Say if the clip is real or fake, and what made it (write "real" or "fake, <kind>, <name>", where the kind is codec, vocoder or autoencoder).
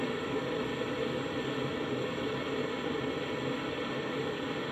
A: real